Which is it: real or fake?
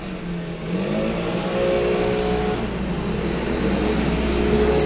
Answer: real